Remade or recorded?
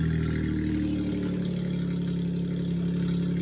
recorded